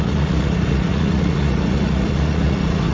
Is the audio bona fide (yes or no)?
no